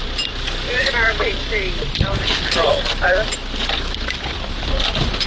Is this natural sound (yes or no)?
no